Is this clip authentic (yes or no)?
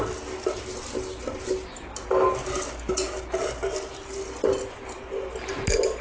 yes